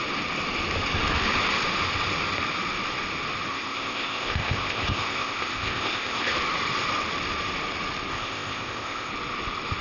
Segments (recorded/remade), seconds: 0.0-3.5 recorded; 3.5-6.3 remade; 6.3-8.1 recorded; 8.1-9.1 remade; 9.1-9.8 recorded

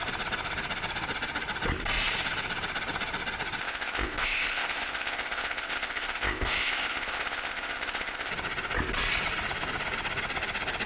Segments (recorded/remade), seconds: 0.0-3.6 recorded; 3.6-8.3 remade; 8.3-10.9 recorded